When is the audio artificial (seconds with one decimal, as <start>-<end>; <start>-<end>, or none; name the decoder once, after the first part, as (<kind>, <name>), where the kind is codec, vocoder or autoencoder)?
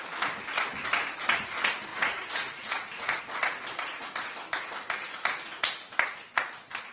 1.9-3.2 (vocoder, Vocos)